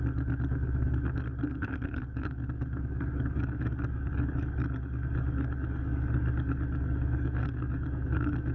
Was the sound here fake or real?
fake